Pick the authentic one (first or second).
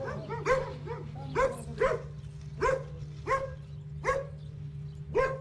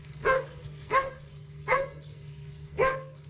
first